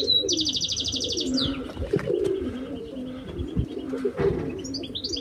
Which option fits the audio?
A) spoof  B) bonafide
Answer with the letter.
B